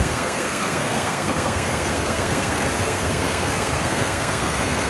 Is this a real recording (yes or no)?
no